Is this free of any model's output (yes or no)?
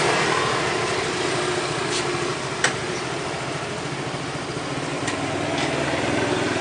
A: yes